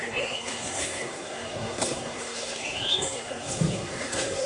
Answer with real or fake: fake